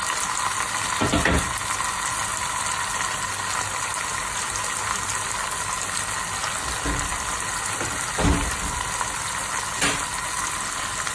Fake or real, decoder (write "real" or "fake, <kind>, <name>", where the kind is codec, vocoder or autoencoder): real